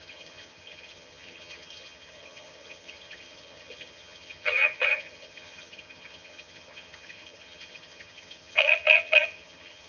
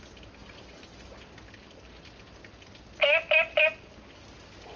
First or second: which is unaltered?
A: second